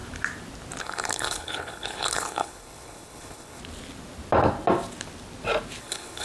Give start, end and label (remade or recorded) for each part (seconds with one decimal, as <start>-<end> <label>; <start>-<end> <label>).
0.0-0.8 recorded; 0.8-3.6 remade; 3.6-5.8 recorded; 5.8-6.2 remade